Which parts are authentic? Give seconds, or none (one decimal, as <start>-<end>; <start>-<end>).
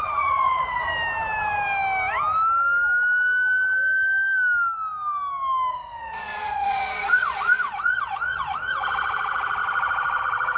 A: 0.9-5.7